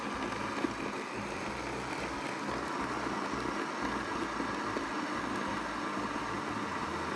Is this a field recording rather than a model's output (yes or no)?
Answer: yes